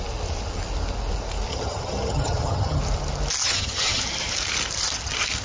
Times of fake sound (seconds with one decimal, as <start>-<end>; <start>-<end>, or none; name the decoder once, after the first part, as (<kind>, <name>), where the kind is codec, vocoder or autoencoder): 1.5-2.8 (vocoder, HiFi-GAN); 3.4-4.0